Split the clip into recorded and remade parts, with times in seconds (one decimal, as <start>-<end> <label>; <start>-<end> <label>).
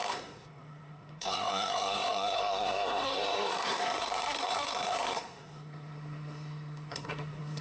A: 0.0-7.6 remade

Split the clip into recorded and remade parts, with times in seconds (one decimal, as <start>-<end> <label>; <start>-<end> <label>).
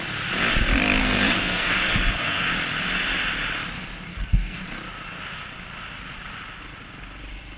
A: 0.0-1.0 recorded; 1.0-2.5 remade; 2.5-4.1 recorded; 4.1-4.6 remade; 4.6-7.6 recorded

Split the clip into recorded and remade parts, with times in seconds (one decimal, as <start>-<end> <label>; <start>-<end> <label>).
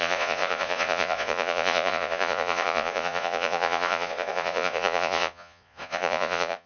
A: 0.0-6.7 remade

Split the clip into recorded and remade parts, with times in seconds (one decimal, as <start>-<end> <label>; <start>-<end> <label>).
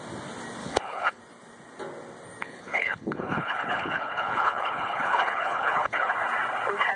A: 0.0-0.6 recorded; 0.6-1.2 remade; 1.2-2.4 recorded; 2.4-6.1 remade; 6.1-7.0 recorded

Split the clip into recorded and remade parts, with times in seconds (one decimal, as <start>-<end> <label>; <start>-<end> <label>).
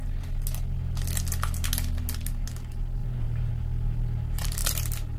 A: 0.0-3.0 recorded; 3.0-3.5 remade; 3.5-5.2 recorded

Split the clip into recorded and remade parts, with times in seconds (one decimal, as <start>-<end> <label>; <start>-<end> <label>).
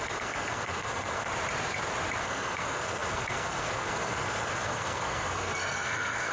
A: 0.0-1.3 remade; 1.3-2.2 recorded; 2.2-6.3 remade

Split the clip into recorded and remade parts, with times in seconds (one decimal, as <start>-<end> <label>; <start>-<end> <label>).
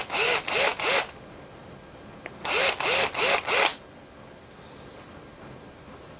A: 0.0-6.2 recorded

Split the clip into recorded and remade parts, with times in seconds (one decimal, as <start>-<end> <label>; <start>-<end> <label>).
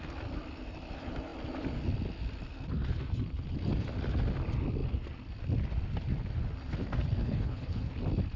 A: 0.0-7.2 recorded; 7.2-7.9 remade; 7.9-8.4 recorded